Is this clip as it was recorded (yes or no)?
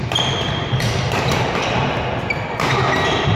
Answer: yes